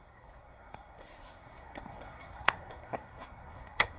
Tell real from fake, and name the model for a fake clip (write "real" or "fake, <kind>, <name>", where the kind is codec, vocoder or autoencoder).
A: fake, codec, SNAC